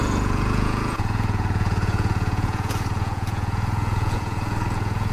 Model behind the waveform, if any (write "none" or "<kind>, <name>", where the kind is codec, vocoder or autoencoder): vocoder, Vocos